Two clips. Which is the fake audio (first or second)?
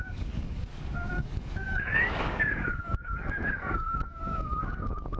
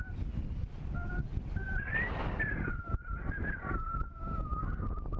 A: first